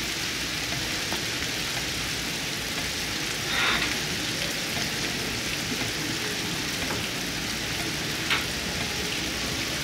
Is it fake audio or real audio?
real